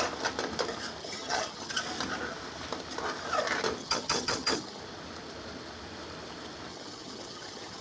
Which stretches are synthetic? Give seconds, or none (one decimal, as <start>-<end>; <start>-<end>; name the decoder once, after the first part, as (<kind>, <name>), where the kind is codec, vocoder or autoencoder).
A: 1.0-1.7 (vocoder, HiFi-GAN); 3.8-4.8; 6.7-7.8